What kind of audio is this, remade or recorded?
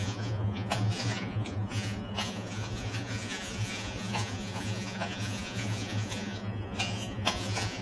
remade